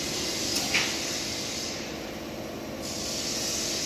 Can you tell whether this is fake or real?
real